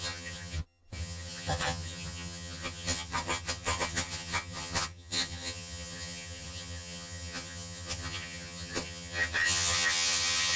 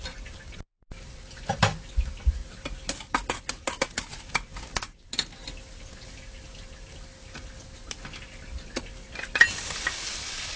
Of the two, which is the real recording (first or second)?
second